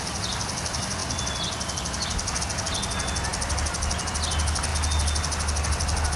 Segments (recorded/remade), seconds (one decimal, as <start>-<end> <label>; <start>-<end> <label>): 0.0-6.2 recorded